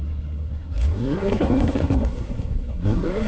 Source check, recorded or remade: remade